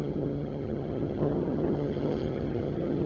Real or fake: fake